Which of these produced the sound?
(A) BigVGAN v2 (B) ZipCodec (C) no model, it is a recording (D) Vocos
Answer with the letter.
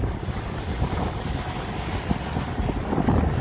C